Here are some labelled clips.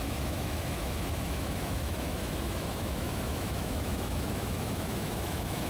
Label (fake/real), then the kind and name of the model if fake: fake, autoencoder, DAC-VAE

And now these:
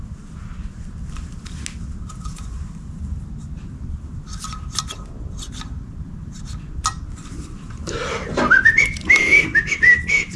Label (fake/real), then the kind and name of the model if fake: real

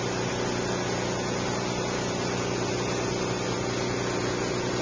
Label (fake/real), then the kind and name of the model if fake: real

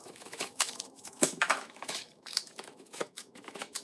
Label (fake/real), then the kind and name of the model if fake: fake, autoencoder, DAC-VAE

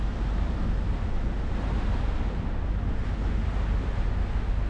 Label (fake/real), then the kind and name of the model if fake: real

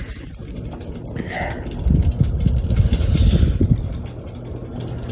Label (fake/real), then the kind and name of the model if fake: real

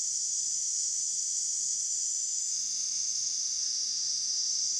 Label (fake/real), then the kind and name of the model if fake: fake, autoencoder, DAC-VAE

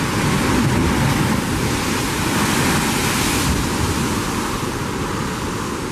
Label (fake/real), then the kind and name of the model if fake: real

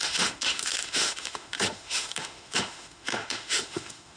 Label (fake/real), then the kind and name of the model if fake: fake, autoencoder, DAC-VAE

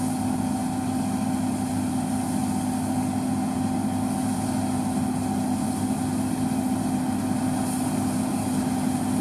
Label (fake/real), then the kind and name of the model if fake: real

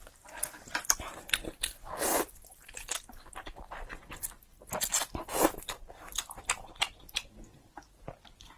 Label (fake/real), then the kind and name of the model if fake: real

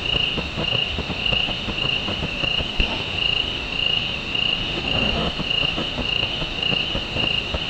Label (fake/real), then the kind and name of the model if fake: fake, autoencoder, DAC-VAE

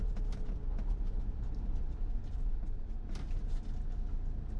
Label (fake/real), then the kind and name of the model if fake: real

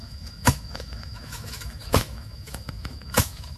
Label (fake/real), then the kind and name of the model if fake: fake, autoencoder, DAC-VAE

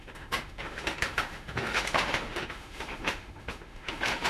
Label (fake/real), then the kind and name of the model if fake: fake, autoencoder, DAC-VAE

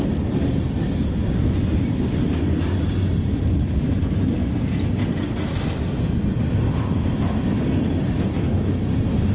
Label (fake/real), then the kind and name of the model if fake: real